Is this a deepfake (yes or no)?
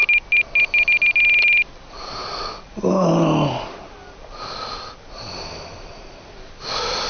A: no